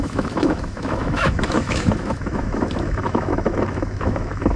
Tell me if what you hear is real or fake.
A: fake